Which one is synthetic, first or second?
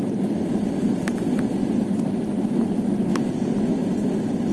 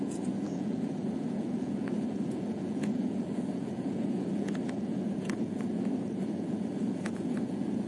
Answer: second